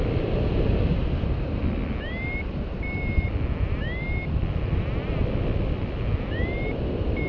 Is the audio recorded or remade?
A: recorded